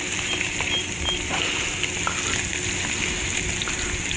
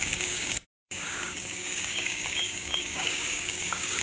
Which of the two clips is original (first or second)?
first